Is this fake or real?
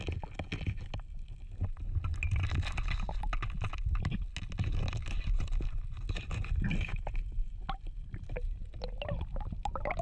real